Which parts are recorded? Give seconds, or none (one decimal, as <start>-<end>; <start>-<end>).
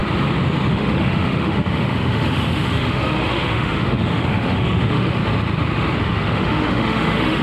0.0-0.7; 5.2-6.0